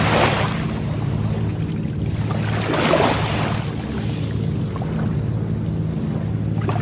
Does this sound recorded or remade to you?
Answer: recorded